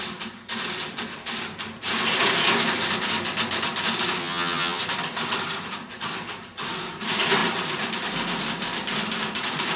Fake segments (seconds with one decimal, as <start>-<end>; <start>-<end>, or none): 4.2-4.8